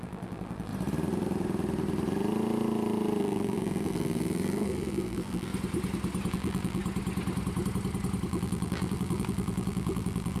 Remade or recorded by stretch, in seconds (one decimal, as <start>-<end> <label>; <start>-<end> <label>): 0.0-0.7 remade; 0.7-3.2 recorded; 3.2-5.5 remade; 5.5-6.3 recorded; 6.3-6.8 remade; 6.8-8.3 recorded; 8.3-10.4 remade